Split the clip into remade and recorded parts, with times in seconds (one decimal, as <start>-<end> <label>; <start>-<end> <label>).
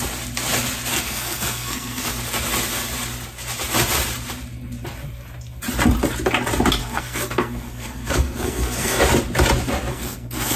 0.0-0.9 recorded; 0.9-2.1 remade; 2.1-6.8 recorded; 6.8-9.0 remade; 9.0-9.9 recorded; 9.9-10.6 remade